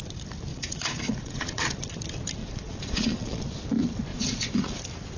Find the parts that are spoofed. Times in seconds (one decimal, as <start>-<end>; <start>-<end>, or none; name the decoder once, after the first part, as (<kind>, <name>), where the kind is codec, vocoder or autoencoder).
0.5-1.8 (vocoder, Vocos); 2.4-3.4; 4.1-4.8